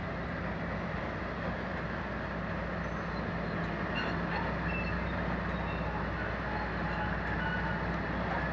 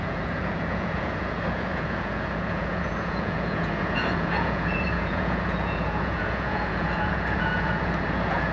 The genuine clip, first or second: first